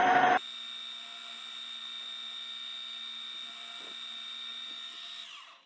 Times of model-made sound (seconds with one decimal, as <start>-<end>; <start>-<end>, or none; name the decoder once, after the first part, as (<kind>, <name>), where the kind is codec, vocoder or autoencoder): none